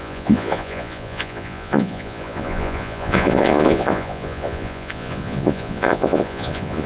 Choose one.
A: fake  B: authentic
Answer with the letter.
A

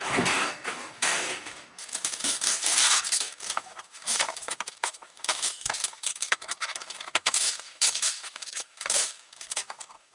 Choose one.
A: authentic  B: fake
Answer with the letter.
B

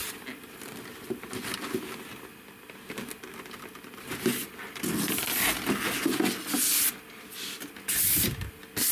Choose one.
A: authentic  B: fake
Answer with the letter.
A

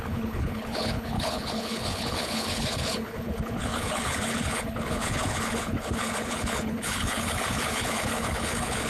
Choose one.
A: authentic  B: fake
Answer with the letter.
B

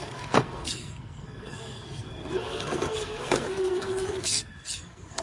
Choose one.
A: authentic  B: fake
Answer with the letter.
B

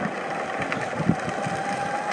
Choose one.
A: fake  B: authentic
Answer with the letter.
B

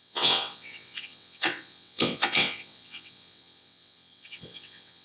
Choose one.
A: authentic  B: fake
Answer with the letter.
B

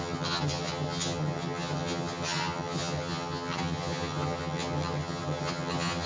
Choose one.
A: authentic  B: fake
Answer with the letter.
B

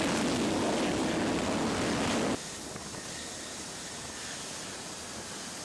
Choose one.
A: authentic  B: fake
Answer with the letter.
A